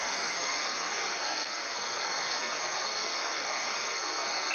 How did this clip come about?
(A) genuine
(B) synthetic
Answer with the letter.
B